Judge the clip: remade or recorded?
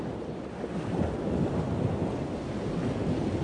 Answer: recorded